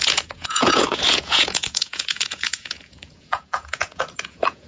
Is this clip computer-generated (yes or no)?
yes